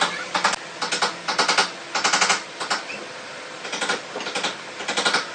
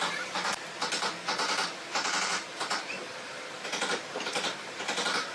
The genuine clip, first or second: first